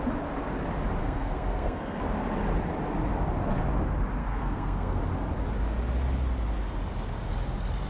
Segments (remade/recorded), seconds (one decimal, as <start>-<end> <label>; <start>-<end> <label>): 0.0-1.0 recorded; 1.0-2.0 remade; 2.0-4.2 recorded; 4.2-5.0 remade; 5.0-7.9 recorded